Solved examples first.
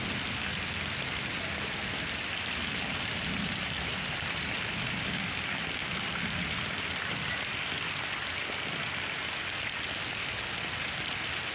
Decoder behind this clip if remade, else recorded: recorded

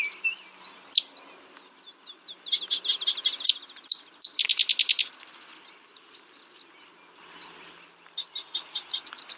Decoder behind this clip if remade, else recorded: recorded